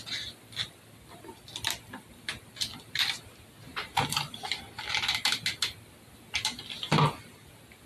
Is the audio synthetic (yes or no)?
no